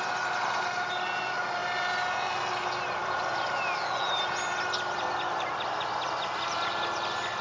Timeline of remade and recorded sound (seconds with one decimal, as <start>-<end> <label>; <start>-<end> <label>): 0.0-7.4 recorded